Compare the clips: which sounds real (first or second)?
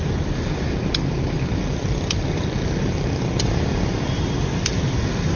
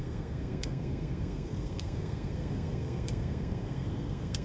first